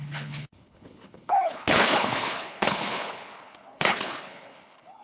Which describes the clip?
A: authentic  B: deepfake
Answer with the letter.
B